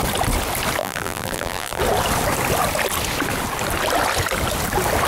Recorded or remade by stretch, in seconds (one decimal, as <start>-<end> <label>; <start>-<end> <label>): 0.0-0.8 recorded; 0.8-1.8 remade; 1.8-5.1 recorded